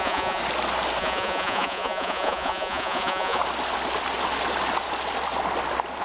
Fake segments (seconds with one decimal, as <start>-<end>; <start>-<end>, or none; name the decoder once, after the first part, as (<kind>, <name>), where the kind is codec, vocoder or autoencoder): 0.0-0.4 (vocoder, Vocos); 1.0-3.4